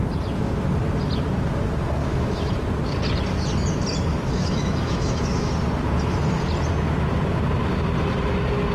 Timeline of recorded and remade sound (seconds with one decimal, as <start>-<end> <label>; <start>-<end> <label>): 0.0-2.0 recorded; 2.0-2.5 remade; 2.5-4.1 recorded; 4.1-5.5 remade; 5.5-8.7 recorded